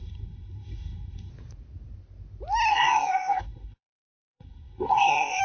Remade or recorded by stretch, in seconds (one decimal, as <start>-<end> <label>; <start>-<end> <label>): 0.0-1.3 remade; 1.3-2.7 recorded; 2.7-5.4 remade